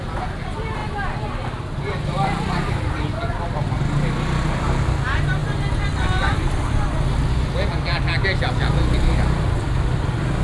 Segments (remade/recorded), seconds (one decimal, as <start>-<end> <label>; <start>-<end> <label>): 0.0-10.4 recorded